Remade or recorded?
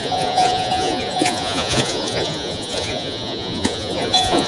remade